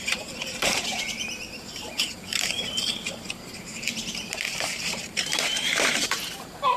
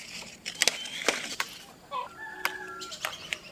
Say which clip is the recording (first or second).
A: second